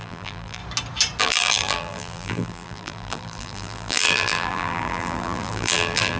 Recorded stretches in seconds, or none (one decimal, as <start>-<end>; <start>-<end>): 0.6-1.2